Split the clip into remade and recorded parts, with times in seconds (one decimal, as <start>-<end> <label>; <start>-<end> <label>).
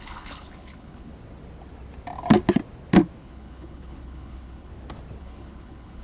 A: 0.0-1.1 remade; 1.1-3.2 recorded; 3.2-4.7 remade; 4.7-5.2 recorded; 5.2-6.0 remade